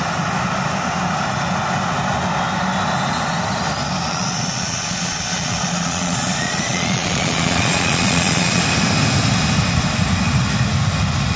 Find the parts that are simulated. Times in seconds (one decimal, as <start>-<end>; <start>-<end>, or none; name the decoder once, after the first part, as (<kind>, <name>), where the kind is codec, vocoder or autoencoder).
4.1-8.6 (vocoder, Vocos)